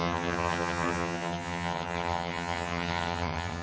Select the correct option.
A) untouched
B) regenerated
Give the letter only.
B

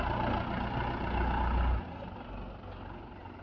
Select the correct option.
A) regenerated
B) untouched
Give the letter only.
B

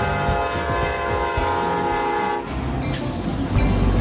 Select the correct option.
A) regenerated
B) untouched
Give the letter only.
B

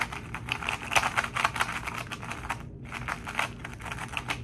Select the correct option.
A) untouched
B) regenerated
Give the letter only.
A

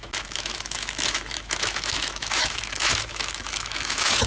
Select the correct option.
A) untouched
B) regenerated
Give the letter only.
B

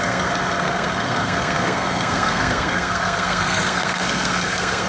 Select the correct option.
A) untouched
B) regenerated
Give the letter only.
B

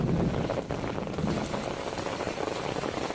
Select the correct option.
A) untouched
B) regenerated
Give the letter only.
A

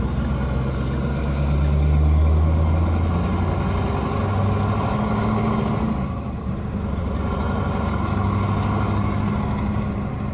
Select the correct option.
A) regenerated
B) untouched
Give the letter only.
B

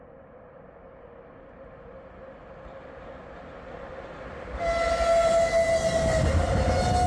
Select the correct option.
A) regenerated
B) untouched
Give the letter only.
B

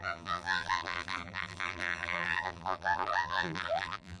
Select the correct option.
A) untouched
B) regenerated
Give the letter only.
B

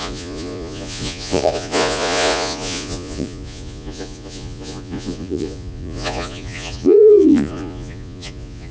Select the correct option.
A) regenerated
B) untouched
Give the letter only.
A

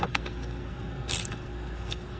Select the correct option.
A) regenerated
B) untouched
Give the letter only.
A